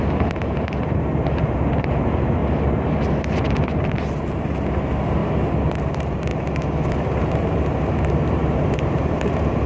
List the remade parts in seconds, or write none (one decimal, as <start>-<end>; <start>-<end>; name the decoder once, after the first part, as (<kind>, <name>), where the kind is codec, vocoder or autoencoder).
0.0-2.4 (vocoder, BigVGAN v2); 4.7-5.2; 5.8-6.3; 6.9-9.7